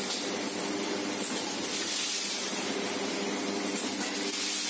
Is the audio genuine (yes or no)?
yes